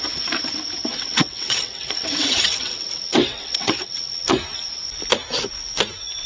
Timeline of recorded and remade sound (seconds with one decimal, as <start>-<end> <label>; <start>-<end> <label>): 0.0-0.9 recorded; 0.9-4.4 remade; 4.4-6.3 recorded